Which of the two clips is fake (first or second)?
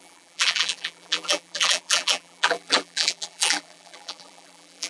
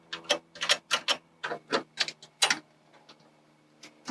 first